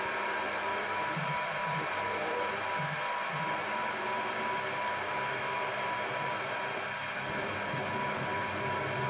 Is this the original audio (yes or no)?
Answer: yes